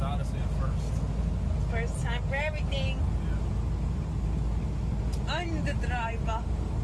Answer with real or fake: real